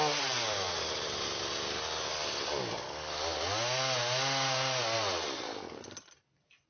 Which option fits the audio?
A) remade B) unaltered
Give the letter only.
B